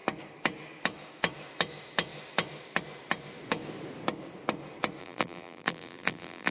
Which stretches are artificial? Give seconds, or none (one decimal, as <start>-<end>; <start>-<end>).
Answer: 5.0-6.5